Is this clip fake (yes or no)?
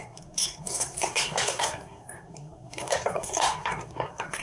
yes